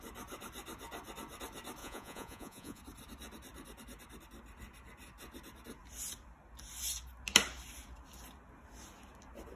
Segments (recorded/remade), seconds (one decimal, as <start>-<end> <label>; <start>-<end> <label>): 0.0-1.8 recorded; 1.8-2.8 remade; 2.8-9.6 recorded